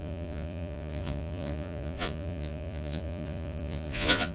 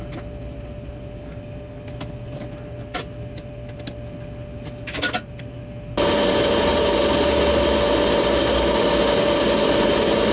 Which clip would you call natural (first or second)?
second